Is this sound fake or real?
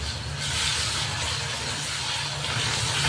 real